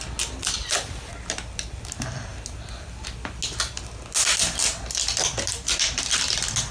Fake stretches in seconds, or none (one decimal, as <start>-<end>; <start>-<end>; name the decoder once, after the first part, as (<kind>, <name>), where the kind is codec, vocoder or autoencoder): none